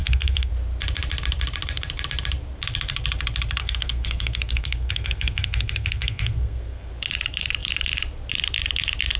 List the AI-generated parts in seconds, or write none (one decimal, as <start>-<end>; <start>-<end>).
0.0-0.5; 3.6-6.9